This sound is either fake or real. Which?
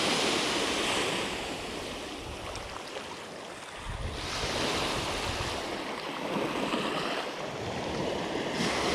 real